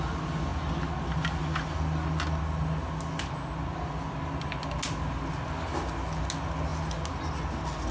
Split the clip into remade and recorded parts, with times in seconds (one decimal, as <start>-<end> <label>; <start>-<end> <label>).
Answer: 0.0-7.9 recorded